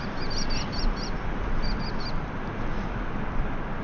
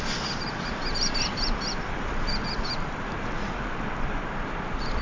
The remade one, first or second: second